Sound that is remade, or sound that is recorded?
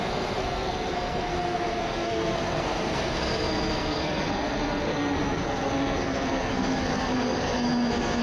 remade